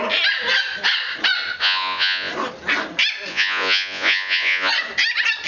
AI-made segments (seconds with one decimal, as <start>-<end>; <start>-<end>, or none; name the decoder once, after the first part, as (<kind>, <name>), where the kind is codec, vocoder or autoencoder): 1.6-2.3 (vocoder, Vocos); 3.3-4.7